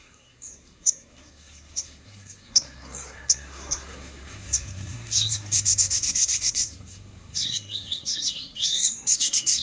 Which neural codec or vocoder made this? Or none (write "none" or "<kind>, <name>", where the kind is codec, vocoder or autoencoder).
codec, SNAC